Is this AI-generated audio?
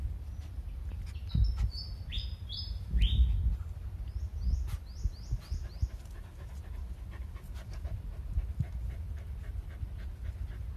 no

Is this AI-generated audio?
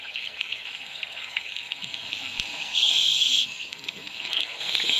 yes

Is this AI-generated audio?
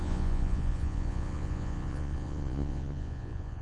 yes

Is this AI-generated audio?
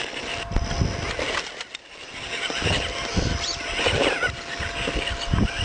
no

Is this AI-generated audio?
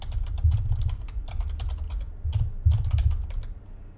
no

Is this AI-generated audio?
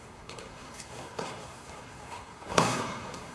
yes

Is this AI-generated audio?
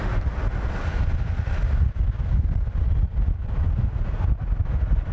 no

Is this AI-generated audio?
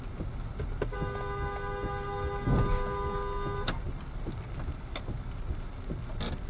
no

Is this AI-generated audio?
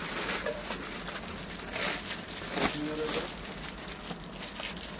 no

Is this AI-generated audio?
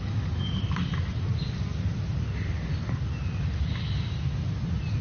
no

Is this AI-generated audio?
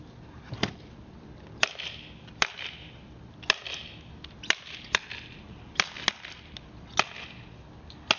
no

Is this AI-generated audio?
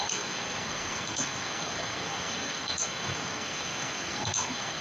yes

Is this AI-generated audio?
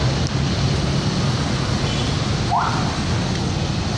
no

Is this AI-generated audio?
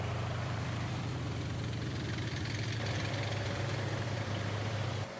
yes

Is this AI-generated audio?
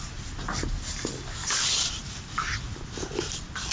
no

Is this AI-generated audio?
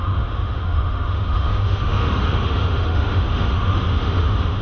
yes